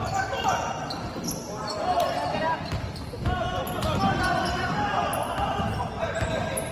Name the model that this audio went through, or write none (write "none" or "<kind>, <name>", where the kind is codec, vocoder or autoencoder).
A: none